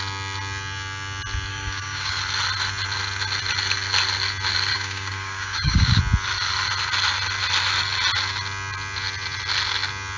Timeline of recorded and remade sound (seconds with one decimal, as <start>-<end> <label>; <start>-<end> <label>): 0.0-1.5 recorded; 1.5-2.2 remade; 2.2-4.7 recorded; 4.7-6.0 remade; 6.0-10.2 recorded